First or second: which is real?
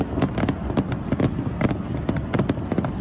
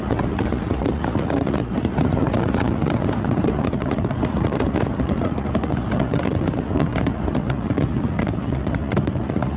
first